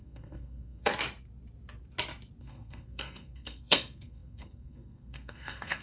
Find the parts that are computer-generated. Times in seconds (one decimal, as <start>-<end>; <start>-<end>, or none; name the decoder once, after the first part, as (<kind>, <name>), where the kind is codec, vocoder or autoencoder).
0.0-0.9 (codec, SNAC); 2.4-5.8